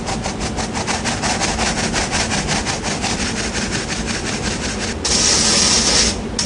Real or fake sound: real